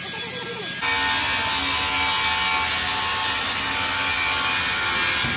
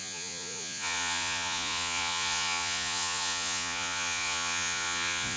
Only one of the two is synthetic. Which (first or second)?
second